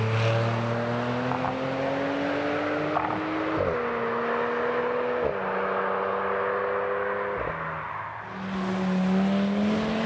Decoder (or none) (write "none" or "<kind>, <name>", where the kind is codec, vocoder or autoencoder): none